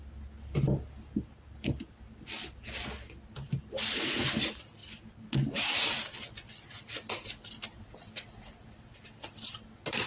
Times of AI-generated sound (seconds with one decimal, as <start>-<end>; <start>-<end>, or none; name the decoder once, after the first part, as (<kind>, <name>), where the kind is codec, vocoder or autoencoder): none